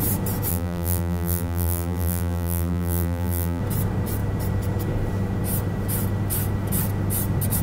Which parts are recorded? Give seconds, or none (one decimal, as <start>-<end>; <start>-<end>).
0.0-0.5; 3.6-7.6